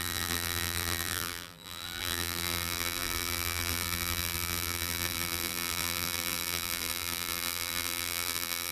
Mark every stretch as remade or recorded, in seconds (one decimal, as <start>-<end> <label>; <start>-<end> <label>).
0.0-8.7 remade